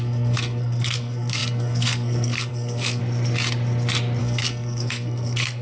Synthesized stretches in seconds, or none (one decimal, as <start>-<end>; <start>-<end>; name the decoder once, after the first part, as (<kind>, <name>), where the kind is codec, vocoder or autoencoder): 0.0-3.0 (codec, SNAC); 4.2-5.6